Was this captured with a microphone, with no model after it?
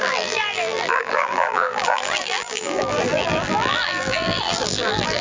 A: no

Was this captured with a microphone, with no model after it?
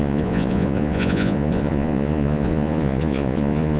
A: no